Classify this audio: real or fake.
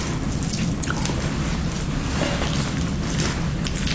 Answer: real